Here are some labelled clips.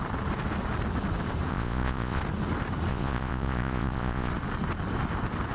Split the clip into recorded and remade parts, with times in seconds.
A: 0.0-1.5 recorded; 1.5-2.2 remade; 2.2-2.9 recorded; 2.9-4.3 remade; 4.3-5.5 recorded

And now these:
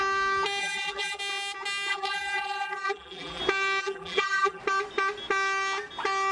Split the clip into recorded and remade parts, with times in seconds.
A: 0.0-0.6 recorded; 0.6-1.2 remade; 1.2-1.9 recorded; 1.9-3.4 remade; 3.4-3.8 recorded; 3.8-4.6 remade; 4.6-6.3 recorded

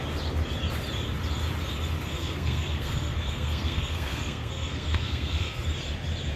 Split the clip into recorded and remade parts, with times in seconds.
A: 0.0-2.1 recorded; 2.1-5.6 remade; 5.6-6.4 recorded

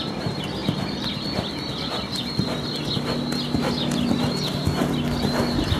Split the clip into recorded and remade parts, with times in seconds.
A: 0.0-5.8 recorded